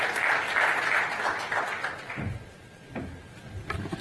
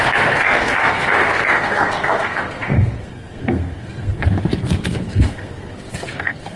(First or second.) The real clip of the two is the first